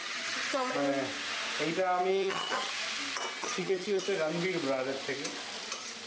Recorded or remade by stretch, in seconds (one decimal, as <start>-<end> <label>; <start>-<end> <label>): 0.0-0.7 remade; 0.7-2.1 recorded; 2.1-2.7 remade; 2.7-3.4 recorded; 3.4-4.0 remade; 4.0-6.1 recorded